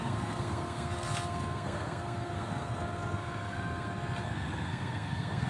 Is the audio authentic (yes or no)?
no